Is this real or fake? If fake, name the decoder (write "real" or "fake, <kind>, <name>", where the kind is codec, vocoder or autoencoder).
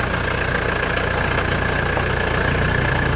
real